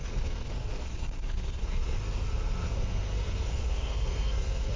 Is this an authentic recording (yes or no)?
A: no